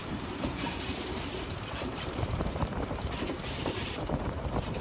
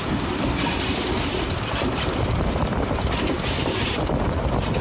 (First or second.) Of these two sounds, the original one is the second